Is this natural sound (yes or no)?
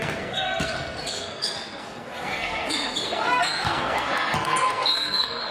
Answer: no